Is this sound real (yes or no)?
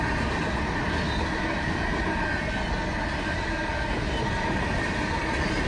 yes